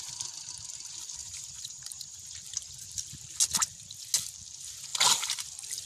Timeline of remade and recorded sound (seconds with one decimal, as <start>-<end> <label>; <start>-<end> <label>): 0.0-1.2 recorded; 1.2-3.0 remade; 3.0-5.9 recorded